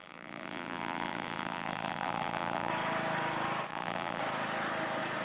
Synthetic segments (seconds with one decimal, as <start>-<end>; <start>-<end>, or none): 0.0-2.7; 3.7-4.2